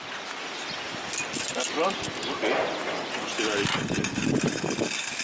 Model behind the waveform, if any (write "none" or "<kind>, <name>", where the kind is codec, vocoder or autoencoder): none